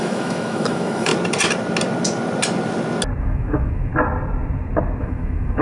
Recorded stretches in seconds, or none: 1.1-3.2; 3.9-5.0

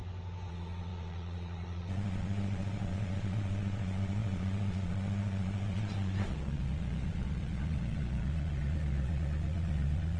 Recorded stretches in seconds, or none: 0.0-0.5

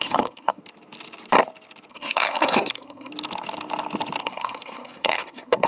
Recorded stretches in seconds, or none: 0.6-1.9; 3.1-4.2

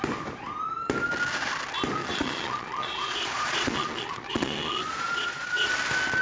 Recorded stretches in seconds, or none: 0.0-2.0; 5.7-6.2

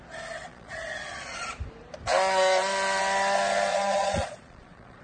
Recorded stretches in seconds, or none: 0.0-0.5; 1.5-3.7